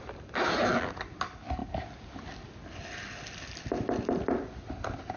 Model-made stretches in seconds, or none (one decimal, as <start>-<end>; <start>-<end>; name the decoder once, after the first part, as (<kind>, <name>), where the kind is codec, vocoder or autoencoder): none